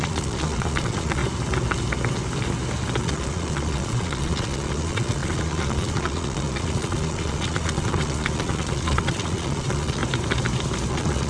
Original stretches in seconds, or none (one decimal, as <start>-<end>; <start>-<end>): 1.2-3.0; 10.0-10.9